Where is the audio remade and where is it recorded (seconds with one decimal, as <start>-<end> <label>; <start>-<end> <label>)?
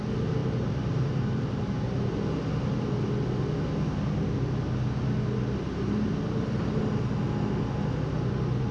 0.0-0.4 recorded; 0.4-1.8 remade; 1.8-8.7 recorded